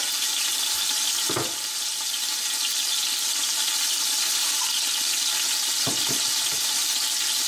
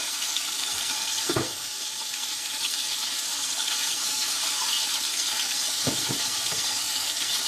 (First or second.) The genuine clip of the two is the first